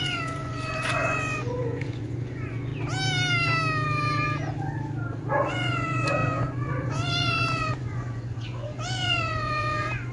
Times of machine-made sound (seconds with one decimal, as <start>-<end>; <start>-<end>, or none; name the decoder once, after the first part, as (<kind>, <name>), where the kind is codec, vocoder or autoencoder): 0.0-2.7 (vocoder, Vocos); 5.3-10.1